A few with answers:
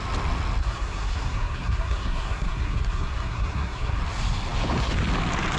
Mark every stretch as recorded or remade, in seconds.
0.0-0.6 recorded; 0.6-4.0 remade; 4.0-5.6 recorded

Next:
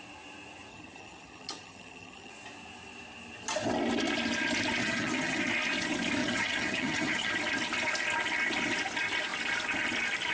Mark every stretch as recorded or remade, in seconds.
0.0-0.7 recorded; 0.7-2.3 remade; 2.3-4.8 recorded; 4.8-5.4 remade; 5.4-6.2 recorded; 6.2-7.3 remade; 7.3-10.3 recorded

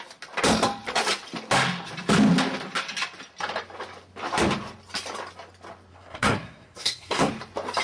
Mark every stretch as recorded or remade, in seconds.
0.0-5.9 recorded; 5.9-7.3 remade; 7.3-7.8 recorded

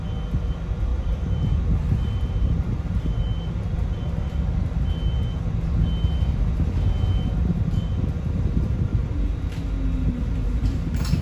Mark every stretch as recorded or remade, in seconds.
0.0-0.9 recorded; 0.9-4.0 remade; 4.0-7.4 recorded; 7.4-8.0 remade; 8.0-11.2 recorded

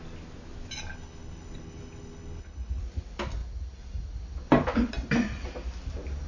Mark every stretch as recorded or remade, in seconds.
0.0-0.9 recorded; 0.9-2.8 remade; 2.8-6.3 recorded